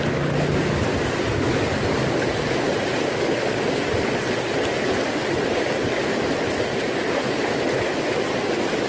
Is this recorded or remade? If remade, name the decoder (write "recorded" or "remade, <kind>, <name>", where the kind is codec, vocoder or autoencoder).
recorded